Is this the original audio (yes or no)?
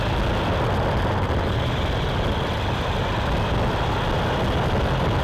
yes